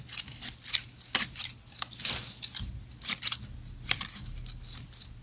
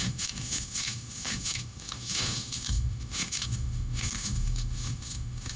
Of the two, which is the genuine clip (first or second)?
first